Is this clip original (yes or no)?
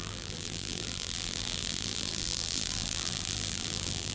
no